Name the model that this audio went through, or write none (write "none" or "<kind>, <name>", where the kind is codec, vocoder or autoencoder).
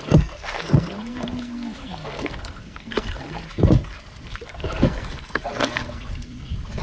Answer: codec, SNAC